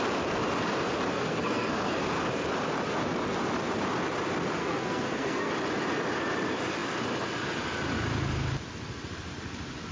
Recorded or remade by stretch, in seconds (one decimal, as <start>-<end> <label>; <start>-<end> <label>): 0.0-1.1 recorded; 1.1-1.9 remade; 1.9-4.6 recorded; 4.6-5.5 remade; 5.5-9.9 recorded